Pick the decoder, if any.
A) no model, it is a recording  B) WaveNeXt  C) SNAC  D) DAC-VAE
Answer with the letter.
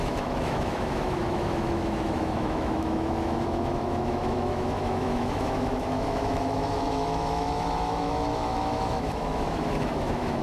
D